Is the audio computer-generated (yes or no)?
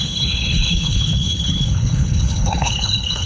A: yes